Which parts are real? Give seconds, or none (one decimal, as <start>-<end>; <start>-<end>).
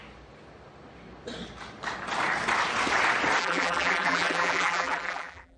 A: 0.0-3.4